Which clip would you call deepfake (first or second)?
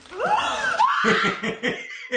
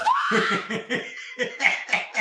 second